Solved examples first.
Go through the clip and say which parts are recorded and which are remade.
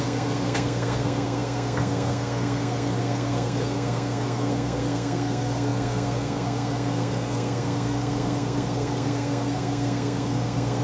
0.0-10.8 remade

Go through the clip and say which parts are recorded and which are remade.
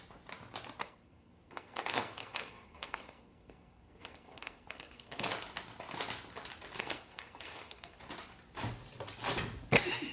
0.0-0.8 recorded; 0.8-5.3 remade; 5.3-6.8 recorded; 6.8-8.0 remade; 8.0-10.1 recorded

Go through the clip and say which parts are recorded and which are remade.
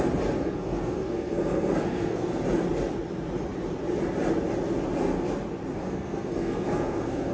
0.0-0.4 recorded; 0.4-2.4 remade; 2.4-5.8 recorded; 5.8-7.3 remade